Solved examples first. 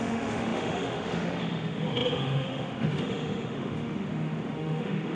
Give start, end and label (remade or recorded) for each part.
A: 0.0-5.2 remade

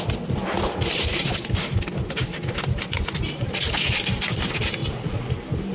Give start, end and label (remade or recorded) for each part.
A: 0.0-4.8 recorded; 4.8-5.3 remade; 5.3-5.7 recorded

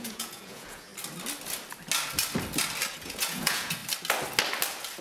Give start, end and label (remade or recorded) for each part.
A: 0.0-0.9 remade; 0.9-3.0 recorded; 3.0-3.8 remade; 3.8-5.0 recorded

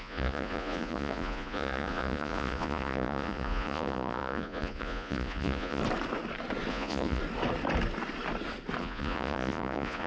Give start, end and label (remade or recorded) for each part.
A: 0.0-5.8 remade; 5.8-6.7 recorded; 6.7-7.2 remade; 7.2-8.8 recorded; 8.8-10.1 remade

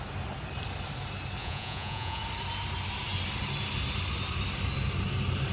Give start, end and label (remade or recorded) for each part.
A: 0.0-1.4 recorded; 1.4-2.2 remade; 2.2-5.5 recorded

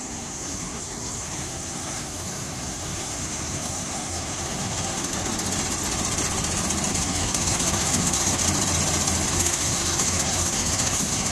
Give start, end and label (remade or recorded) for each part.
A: 0.0-5.1 remade; 5.1-6.9 recorded; 6.9-8.4 remade; 8.4-9.3 recorded; 9.3-11.3 remade

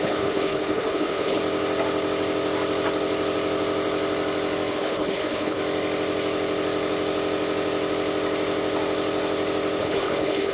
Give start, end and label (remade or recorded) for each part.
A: 0.0-1.4 remade; 1.4-4.7 recorded; 4.7-5.6 remade; 5.6-9.8 recorded; 9.8-10.5 remade